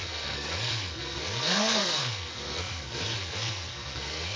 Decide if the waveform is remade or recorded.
remade